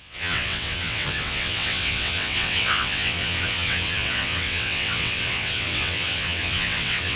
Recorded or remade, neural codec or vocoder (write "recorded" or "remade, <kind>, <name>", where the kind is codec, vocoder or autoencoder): remade, vocoder, WaveNeXt